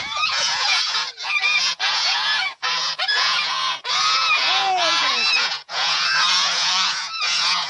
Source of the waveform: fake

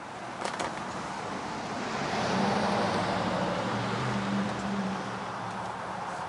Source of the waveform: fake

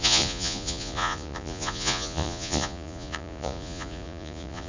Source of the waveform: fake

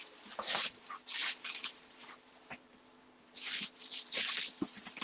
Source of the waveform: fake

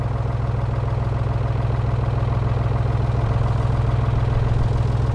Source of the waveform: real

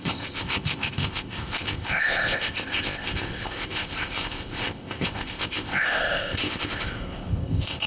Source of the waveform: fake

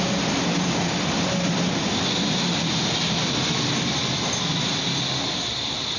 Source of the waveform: real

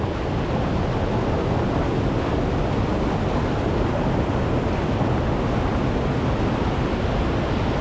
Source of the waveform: real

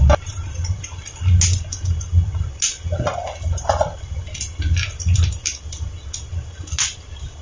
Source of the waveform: real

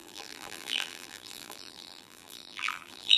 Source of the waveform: fake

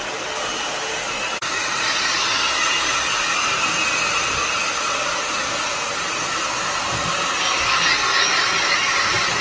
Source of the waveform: real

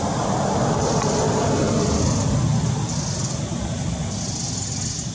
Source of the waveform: real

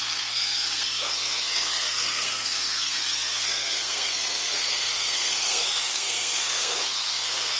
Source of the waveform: fake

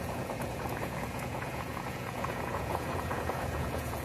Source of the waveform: fake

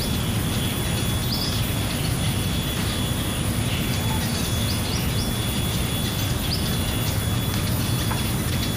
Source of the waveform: real